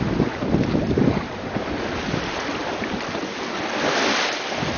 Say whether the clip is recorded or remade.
recorded